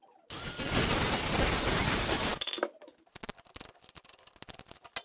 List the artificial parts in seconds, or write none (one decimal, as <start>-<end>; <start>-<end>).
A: none